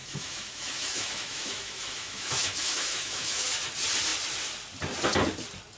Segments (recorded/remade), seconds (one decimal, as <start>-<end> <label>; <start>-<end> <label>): 0.0-3.5 remade; 3.5-5.8 recorded